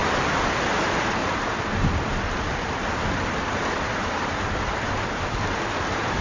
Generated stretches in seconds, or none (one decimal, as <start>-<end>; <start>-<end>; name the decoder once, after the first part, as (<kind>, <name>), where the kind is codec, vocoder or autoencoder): 1.2-4.9 (vocoder, BigVGAN v2)